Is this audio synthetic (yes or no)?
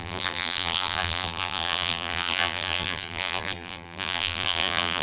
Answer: yes